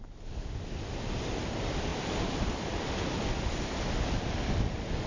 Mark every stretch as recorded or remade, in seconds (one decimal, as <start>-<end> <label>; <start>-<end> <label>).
0.0-5.1 recorded